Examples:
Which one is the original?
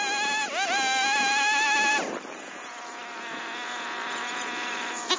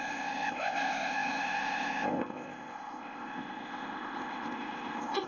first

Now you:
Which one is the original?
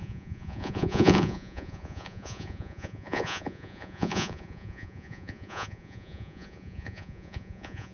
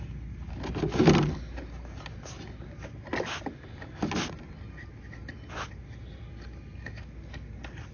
second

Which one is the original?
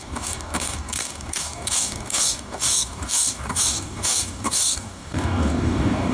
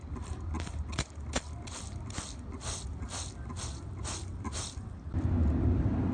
second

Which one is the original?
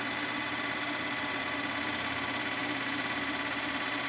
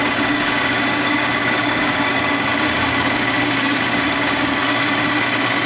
first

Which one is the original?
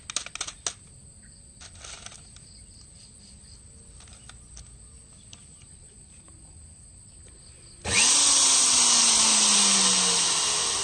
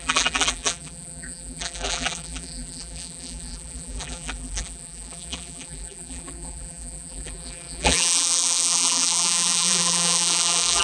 first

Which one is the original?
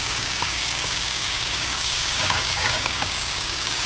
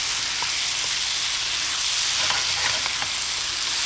second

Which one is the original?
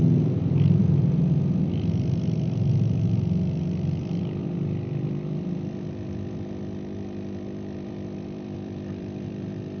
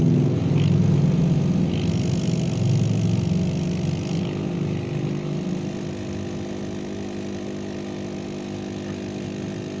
second